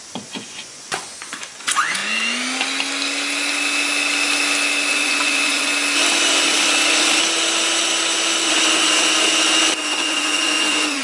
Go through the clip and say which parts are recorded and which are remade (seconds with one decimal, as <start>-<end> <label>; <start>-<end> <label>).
0.0-2.0 remade; 2.0-4.9 recorded; 4.9-5.7 remade; 5.7-9.8 recorded; 9.8-11.0 remade